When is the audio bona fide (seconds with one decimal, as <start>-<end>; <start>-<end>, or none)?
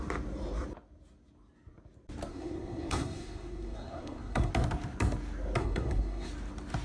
0.0-2.3; 4.5-5.6; 6.3-6.8